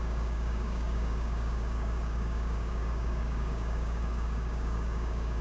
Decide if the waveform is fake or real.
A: fake